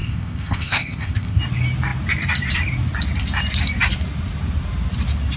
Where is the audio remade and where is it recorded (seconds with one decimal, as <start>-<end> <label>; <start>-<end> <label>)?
0.0-1.4 remade; 1.4-5.4 recorded

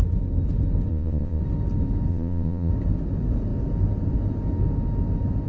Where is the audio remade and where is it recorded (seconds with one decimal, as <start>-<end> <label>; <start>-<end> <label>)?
0.0-0.9 recorded; 0.9-1.4 remade; 1.4-2.1 recorded; 2.1-2.7 remade; 2.7-5.5 recorded

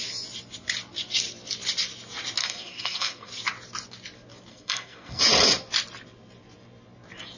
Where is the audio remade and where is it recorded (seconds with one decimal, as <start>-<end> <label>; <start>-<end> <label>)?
0.0-2.4 recorded; 2.4-3.3 remade; 3.3-4.5 recorded; 4.5-5.2 remade; 5.2-7.4 recorded

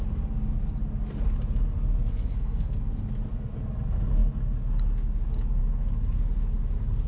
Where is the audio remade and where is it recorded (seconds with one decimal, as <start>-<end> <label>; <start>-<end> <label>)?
0.0-2.1 recorded; 2.1-2.8 remade; 2.8-7.1 recorded

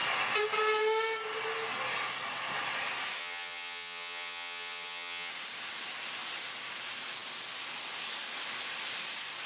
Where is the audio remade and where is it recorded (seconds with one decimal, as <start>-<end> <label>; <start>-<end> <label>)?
0.0-3.2 recorded; 3.2-5.3 remade; 5.3-9.5 recorded

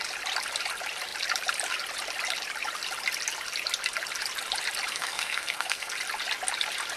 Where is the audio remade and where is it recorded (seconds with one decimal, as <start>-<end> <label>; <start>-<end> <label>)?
0.0-4.9 recorded; 4.9-5.9 remade; 5.9-7.0 recorded